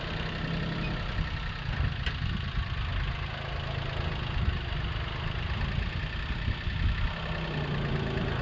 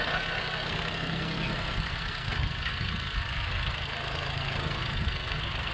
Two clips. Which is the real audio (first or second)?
first